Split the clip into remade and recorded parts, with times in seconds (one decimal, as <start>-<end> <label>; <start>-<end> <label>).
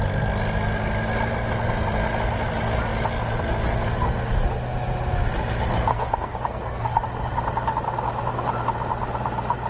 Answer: 0.0-5.9 recorded; 5.9-7.0 remade; 7.0-9.7 recorded